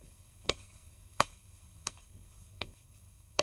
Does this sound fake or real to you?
fake